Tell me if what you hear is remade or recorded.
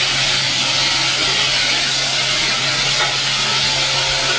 recorded